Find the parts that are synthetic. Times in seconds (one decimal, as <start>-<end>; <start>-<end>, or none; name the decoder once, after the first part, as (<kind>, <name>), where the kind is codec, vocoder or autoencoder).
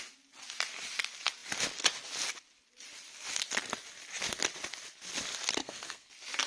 5.6-6.1 (codec, SNAC)